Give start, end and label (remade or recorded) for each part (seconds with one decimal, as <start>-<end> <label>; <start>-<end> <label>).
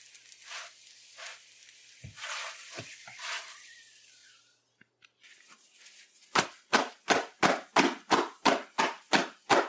0.0-9.7 recorded